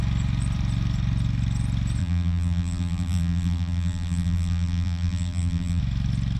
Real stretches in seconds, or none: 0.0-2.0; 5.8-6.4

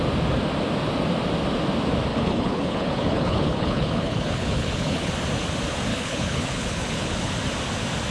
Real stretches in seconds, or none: 0.0-2.1; 5.1-5.9; 7.3-8.1